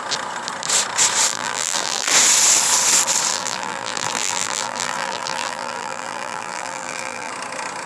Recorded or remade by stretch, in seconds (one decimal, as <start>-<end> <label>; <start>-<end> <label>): 0.0-1.3 recorded; 1.3-2.1 remade; 2.1-3.3 recorded; 3.3-7.3 remade; 7.3-7.9 recorded